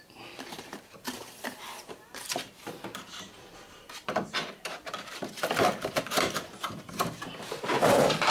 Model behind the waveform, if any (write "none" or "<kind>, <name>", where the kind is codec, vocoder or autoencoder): vocoder, BigVGAN v2